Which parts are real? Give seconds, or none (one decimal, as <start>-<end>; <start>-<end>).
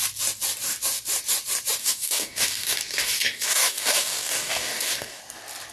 0.0-1.8; 5.2-5.7